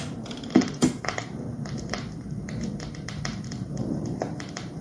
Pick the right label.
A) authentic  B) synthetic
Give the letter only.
B